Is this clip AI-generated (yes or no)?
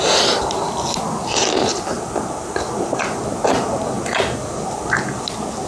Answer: no